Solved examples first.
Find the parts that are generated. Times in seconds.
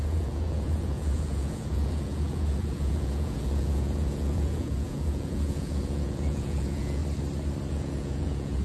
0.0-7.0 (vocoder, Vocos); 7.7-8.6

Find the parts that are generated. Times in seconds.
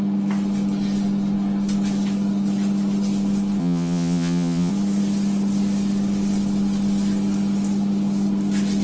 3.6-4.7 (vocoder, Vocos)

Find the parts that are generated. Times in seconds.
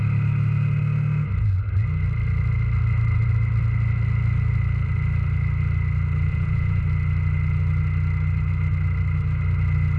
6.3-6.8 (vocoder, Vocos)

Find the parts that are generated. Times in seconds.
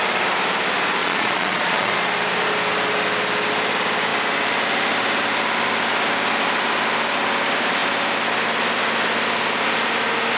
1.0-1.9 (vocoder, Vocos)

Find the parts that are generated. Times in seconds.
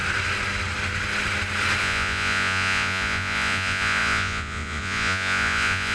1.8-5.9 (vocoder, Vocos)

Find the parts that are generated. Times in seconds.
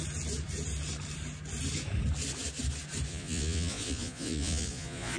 3.1-5.2 (vocoder, Vocos)